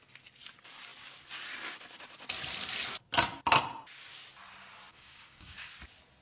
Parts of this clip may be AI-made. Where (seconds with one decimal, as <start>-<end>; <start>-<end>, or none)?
4.9-5.7